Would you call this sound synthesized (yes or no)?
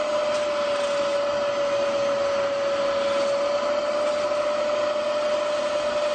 no